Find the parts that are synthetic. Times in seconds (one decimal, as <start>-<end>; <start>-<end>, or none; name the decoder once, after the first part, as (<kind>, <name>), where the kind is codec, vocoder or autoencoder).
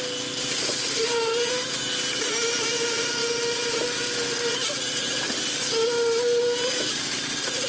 none